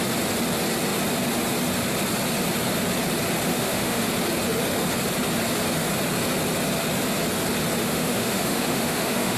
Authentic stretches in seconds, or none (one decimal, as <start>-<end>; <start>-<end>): 0.0-3.5; 4.1-7.8